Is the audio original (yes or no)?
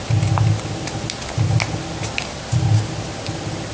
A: yes